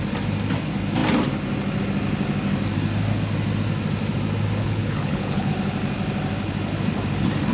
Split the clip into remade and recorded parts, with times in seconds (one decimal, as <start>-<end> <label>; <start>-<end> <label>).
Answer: 0.0-4.6 recorded; 4.6-5.5 remade; 5.5-7.5 recorded